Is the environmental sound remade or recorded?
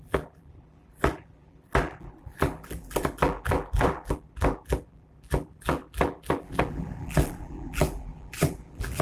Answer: remade